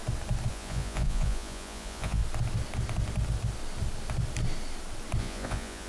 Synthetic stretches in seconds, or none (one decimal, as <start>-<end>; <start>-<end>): 0.5-2.2; 5.2-5.9